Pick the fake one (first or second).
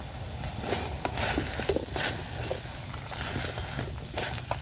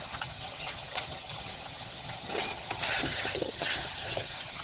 second